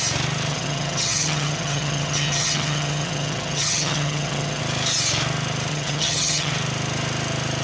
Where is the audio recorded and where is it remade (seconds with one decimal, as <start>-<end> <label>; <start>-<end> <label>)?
0.0-0.5 recorded; 0.5-4.6 remade; 4.6-5.7 recorded; 5.7-6.5 remade; 6.5-7.6 recorded